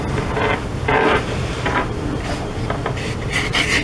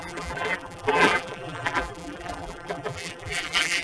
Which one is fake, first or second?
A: second